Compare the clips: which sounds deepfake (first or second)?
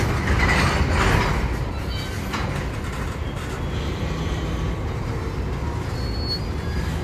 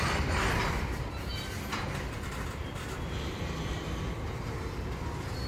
second